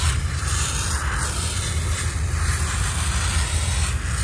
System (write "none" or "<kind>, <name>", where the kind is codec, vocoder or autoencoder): none